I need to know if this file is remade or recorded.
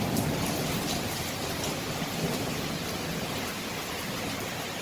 recorded